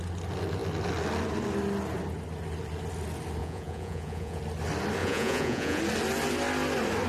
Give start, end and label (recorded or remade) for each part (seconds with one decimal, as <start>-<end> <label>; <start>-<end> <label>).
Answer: 0.0-3.4 recorded; 3.4-4.4 remade; 4.4-5.0 recorded; 5.0-5.8 remade; 5.8-7.1 recorded